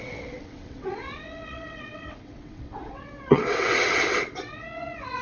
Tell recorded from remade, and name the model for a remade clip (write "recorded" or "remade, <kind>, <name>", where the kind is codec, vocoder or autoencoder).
remade, vocoder, WaveNeXt